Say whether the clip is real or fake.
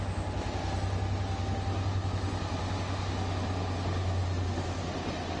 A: real